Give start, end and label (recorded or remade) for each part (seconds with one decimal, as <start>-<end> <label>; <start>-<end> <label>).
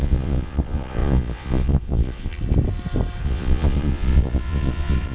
0.0-2.3 remade; 2.3-3.2 recorded; 3.2-5.1 remade